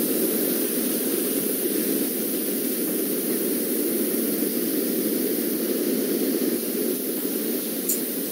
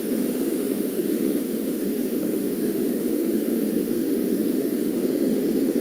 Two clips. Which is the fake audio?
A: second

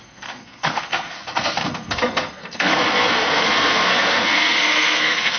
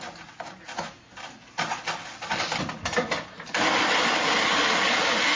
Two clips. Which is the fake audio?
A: first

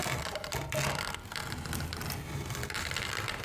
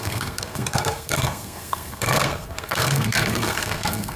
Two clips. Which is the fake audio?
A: second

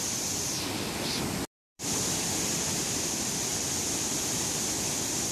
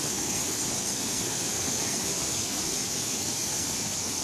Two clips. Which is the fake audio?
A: second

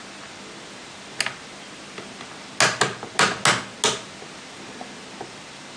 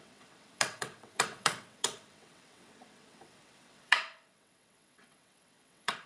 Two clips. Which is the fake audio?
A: second